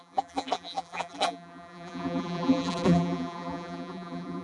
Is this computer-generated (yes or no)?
yes